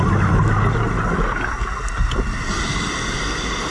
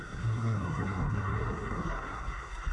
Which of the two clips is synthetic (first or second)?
second